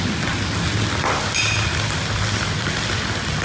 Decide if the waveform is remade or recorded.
recorded